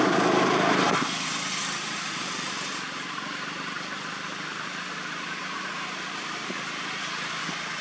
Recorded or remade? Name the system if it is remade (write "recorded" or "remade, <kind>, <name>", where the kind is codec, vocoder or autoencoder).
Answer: recorded